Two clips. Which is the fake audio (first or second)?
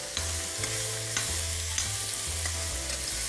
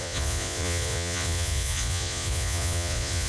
second